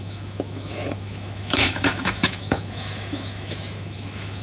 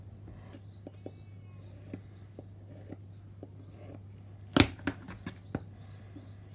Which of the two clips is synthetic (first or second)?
first